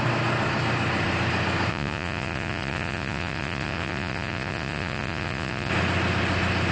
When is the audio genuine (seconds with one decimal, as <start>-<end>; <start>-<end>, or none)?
0.0-1.7; 5.7-6.7